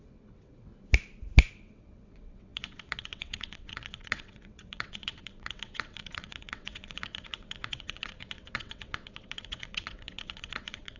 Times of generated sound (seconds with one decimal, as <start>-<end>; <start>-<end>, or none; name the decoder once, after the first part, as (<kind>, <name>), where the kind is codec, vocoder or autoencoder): 0.0-0.7 (vocoder, WaveNeXt); 1.5-11.0